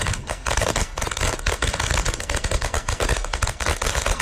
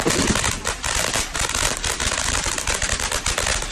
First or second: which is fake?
first